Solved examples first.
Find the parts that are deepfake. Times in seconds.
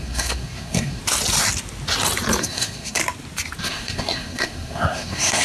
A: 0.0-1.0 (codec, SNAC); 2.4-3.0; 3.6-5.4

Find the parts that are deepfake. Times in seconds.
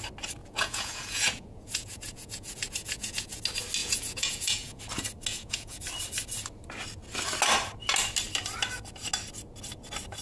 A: 0.4-3.4 (vocoder, Vocos); 3.8-4.8; 5.3-5.8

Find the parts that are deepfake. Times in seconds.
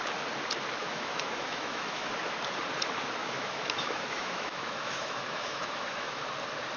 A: 0.8-2.1 (autoencoder, DAC-VAE); 3.2-6.2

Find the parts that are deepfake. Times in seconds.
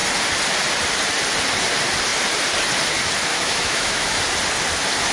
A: 3.3-4.2 (autoencoder, DAC-VAE)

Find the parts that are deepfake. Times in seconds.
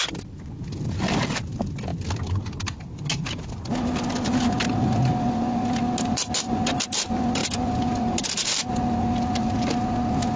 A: none